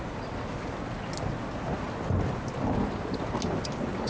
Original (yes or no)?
yes